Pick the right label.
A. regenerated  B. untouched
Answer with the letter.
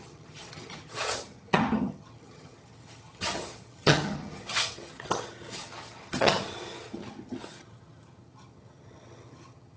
A